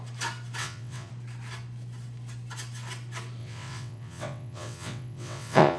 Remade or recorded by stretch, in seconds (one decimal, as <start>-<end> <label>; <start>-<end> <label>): 0.0-0.6 recorded; 0.6-1.1 remade; 1.1-3.4 recorded; 3.4-5.8 remade